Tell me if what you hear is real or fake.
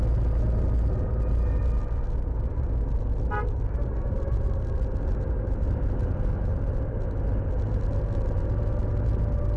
real